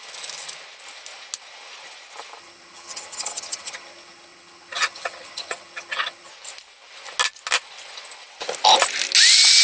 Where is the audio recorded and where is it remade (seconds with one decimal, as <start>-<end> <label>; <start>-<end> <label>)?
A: 0.0-2.4 recorded; 2.4-6.3 remade; 6.3-9.6 recorded